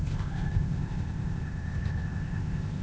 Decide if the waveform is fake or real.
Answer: fake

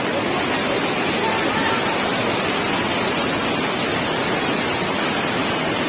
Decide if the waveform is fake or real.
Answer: real